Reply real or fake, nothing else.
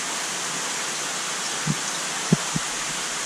real